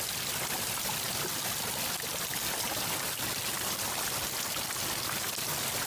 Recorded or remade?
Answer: recorded